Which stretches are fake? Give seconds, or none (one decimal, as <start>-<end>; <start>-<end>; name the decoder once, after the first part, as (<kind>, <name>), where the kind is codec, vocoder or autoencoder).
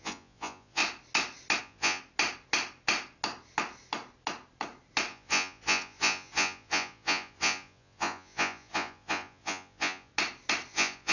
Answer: 0.0-0.8 (vocoder, Vocos); 1.6-2.0; 5.1-10.1; 10.7-11.1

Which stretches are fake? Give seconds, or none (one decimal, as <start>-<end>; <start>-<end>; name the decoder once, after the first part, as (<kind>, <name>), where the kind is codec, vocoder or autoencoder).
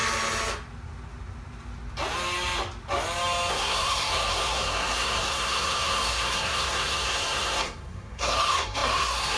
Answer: 3.5-9.4 (codec, SNAC)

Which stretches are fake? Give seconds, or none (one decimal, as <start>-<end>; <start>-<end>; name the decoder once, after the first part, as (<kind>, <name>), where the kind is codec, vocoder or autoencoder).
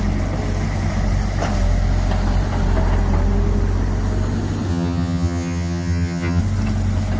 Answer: 4.7-6.4 (vocoder, HiFi-GAN)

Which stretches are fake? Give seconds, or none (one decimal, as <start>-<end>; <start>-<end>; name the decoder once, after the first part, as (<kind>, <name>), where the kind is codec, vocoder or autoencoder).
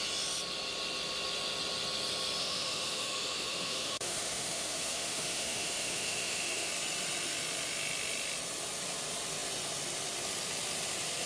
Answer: 2.4-6.7 (autoencoder, DAC-VAE)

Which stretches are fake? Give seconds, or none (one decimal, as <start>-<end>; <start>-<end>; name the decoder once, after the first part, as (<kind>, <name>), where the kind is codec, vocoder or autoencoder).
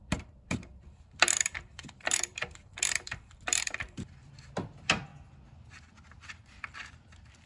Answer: 0.0-4.3 (vocoder, BigVGAN v2)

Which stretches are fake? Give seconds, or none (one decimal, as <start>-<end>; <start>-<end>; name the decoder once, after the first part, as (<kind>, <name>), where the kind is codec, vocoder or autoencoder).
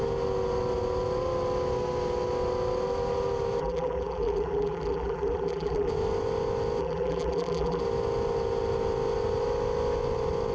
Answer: 3.6-5.9 (vocoder, BigVGAN v2); 6.8-7.8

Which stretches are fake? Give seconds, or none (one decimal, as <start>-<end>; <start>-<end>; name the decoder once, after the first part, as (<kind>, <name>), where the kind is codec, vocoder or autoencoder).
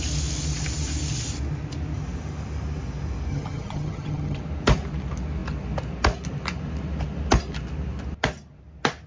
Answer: 3.3-4.4 (vocoder, HiFi-GAN)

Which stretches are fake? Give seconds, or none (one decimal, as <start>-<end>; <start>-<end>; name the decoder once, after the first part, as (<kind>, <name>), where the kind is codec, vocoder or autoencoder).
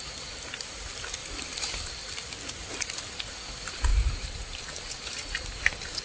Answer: 1.2-1.8 (vocoder, BigVGAN v2); 3.9-4.6